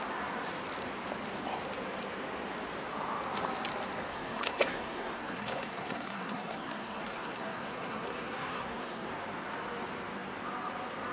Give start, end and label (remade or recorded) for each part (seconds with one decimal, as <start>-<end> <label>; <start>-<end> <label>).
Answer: 0.0-4.1 recorded; 4.1-9.1 remade; 9.1-11.1 recorded